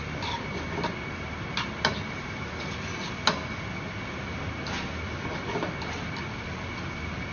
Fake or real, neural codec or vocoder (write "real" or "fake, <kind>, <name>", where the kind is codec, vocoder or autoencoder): real